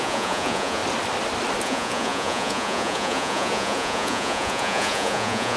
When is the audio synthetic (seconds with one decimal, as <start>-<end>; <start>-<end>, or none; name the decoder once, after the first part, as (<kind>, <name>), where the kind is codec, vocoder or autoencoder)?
0.0-0.8 (vocoder, Vocos); 1.6-5.6